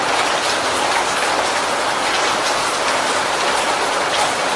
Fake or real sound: real